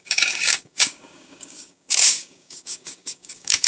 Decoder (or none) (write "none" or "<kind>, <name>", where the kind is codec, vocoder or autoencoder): codec, DAC